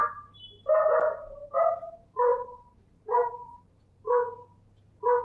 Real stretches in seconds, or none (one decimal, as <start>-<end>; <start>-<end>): 0.0-2.3; 4.0-5.2